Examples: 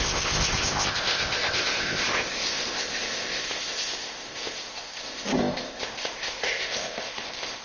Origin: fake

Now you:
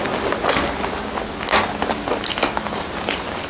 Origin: real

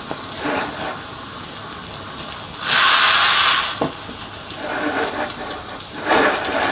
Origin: real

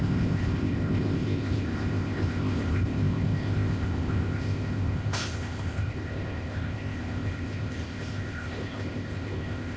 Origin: fake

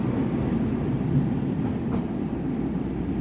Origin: real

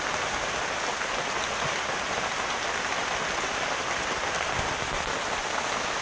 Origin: real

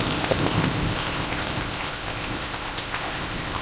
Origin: fake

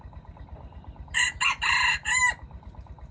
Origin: real